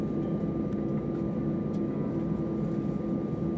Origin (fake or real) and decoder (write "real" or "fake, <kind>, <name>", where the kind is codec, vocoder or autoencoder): real